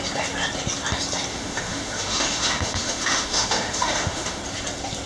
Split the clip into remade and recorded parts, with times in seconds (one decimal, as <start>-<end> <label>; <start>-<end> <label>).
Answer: 0.0-1.3 recorded; 1.3-4.4 remade; 4.4-5.1 recorded